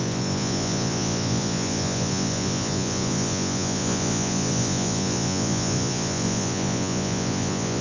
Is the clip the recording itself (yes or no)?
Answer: no